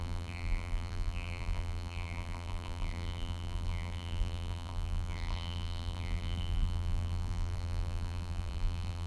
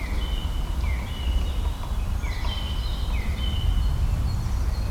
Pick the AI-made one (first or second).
first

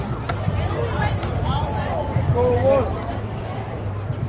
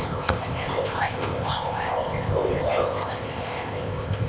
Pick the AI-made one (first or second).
second